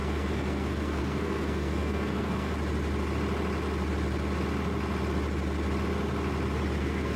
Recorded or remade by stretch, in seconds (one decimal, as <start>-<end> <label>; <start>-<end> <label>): 0.0-2.5 remade; 2.5-6.8 recorded; 6.8-7.2 remade